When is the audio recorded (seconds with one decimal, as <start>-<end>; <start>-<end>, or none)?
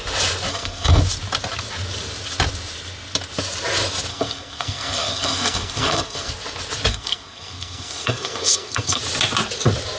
0.0-0.5; 1.0-4.1; 6.3-6.9; 9.0-10.0